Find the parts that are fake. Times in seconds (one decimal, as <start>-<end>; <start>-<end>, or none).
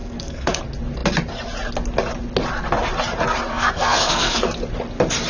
0.0-0.6; 3.5-4.4